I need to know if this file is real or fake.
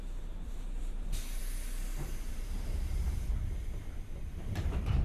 fake